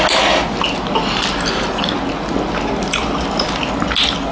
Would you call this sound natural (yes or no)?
yes